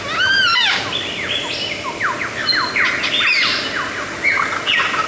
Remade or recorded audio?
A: recorded